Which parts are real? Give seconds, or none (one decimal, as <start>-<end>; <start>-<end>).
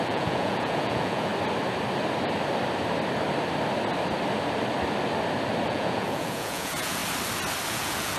1.3-5.7; 7.0-7.7